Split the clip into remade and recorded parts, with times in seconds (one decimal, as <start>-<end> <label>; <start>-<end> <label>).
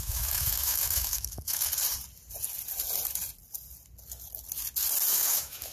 0.0-1.7 remade; 1.7-5.1 recorded; 5.1-5.7 remade